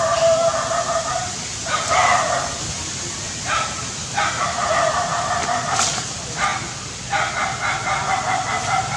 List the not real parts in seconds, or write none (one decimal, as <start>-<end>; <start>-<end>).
none